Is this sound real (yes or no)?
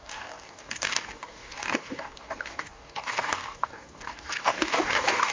no